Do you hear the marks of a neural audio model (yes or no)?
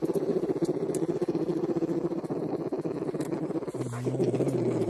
no